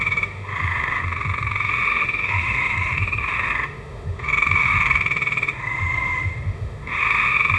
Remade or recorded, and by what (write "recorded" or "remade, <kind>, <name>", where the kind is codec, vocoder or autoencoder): remade, autoencoder, DAC-VAE